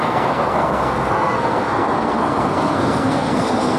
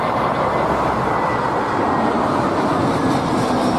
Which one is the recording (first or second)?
second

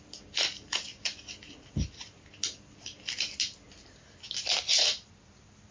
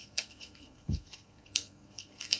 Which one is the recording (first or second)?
first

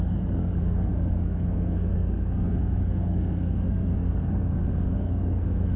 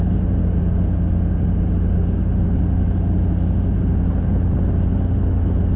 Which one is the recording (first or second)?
second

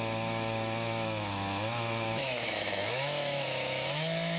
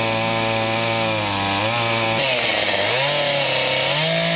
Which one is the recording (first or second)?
second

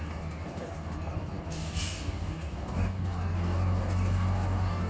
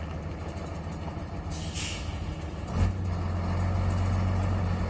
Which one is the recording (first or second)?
second